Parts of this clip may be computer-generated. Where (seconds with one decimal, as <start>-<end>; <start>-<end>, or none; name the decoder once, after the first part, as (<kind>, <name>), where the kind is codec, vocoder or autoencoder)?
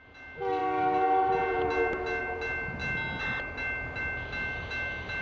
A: none